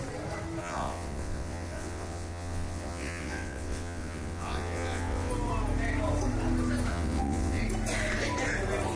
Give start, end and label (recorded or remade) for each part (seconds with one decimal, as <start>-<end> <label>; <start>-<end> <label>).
0.0-0.6 recorded; 0.6-5.3 remade; 5.3-6.9 recorded; 6.9-7.6 remade; 7.6-9.0 recorded